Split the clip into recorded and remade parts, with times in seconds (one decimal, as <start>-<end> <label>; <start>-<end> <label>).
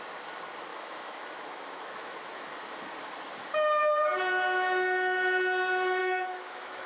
0.0-0.7 recorded; 0.7-2.5 remade; 2.5-6.0 recorded; 6.0-6.9 remade